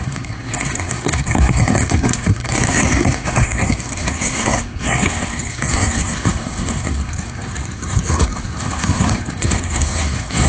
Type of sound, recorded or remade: remade